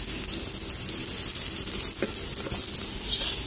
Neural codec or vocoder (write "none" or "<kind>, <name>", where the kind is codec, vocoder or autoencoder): none